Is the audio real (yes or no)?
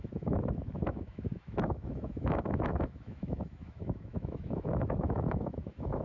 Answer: no